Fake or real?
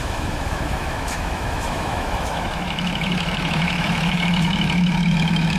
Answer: fake